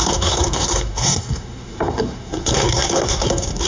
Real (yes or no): no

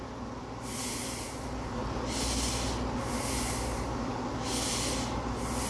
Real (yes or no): yes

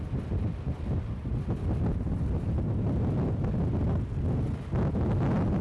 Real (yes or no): yes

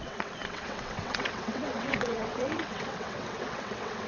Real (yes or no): no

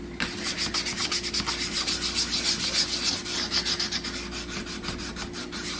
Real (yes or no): yes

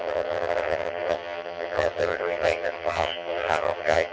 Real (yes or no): no